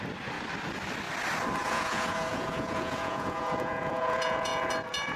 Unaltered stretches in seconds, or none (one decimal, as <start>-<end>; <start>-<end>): 0.0-1.6; 4.7-5.2